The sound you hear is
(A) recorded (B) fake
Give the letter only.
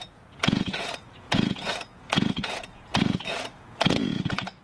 B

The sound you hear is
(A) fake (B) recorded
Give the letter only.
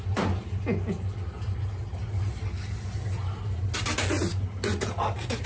B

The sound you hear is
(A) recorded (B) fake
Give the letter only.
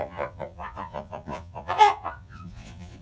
B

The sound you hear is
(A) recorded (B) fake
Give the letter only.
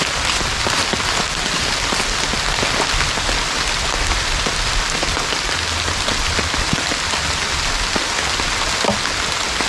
A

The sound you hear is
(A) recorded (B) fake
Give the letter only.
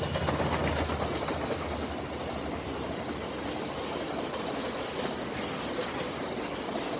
A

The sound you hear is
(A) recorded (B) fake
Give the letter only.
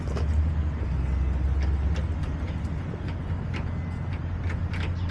A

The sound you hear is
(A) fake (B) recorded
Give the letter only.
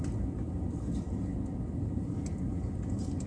B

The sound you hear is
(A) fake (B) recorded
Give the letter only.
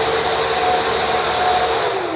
B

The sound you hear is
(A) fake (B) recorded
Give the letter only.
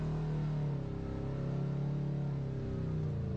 B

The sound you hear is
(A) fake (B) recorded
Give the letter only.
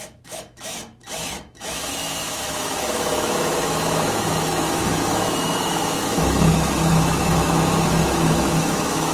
A